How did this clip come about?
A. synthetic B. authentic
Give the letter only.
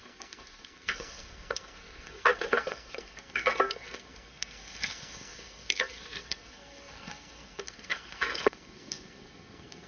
A